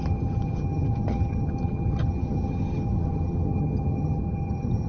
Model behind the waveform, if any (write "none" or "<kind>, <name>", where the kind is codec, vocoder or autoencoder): vocoder, HiFi-GAN